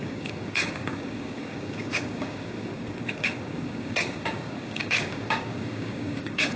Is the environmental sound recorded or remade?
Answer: remade